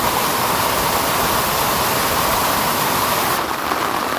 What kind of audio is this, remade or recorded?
remade